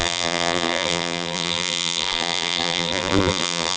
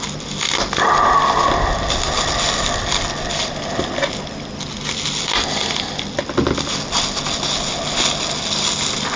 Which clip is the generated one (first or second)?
first